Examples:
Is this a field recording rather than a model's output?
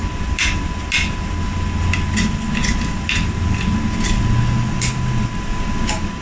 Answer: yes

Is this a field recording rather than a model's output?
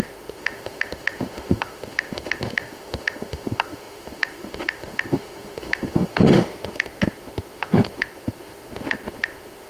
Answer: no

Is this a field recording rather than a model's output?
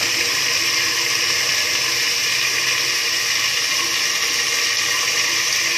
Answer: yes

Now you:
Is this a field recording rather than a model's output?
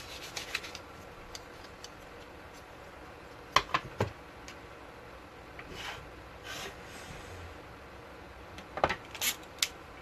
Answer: yes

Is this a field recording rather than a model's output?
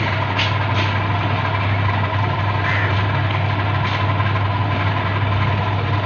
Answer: yes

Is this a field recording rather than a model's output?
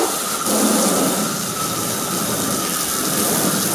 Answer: yes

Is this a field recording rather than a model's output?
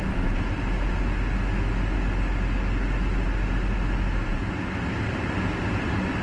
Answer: yes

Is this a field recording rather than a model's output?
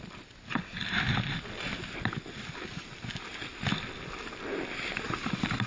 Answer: yes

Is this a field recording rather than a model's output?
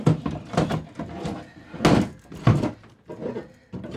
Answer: yes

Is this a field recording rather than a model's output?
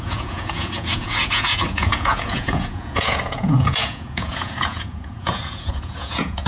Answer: no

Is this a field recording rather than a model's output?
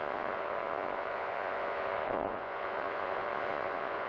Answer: no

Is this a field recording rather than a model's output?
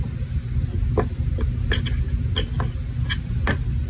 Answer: yes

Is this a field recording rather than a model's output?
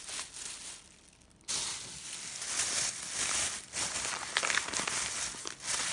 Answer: yes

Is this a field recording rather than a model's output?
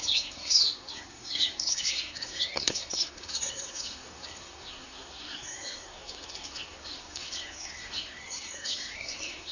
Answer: no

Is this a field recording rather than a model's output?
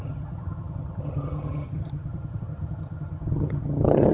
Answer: no